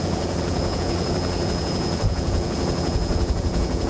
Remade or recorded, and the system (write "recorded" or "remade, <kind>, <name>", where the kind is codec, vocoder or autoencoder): remade, vocoder, Vocos